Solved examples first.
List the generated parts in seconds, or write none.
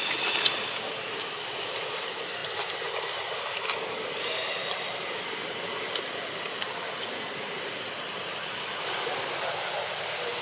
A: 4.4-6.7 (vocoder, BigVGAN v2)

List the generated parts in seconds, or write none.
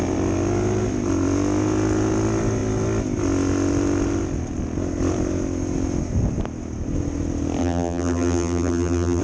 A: 7.6-9.2 (vocoder, BigVGAN v2)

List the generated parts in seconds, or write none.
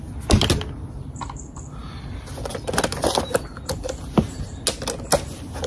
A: none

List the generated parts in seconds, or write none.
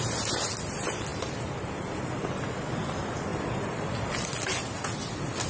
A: 1.1-1.6 (vocoder, BigVGAN v2); 3.3-4.6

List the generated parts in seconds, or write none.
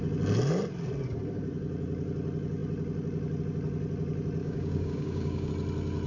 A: 4.4-5.5 (codec, DAC)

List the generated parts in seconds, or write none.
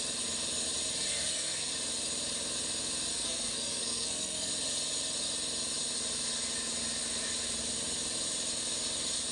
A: 1.1-1.7 (codec, SNAC); 3.1-4.5